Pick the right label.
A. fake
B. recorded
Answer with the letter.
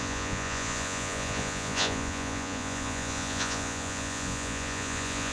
A